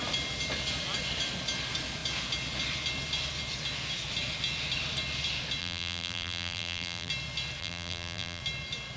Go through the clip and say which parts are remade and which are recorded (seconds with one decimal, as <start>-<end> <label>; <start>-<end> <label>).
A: 0.0-5.6 recorded; 5.6-7.1 remade; 7.1-7.6 recorded; 7.6-8.4 remade; 8.4-9.0 recorded